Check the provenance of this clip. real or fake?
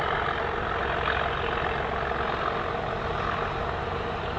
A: real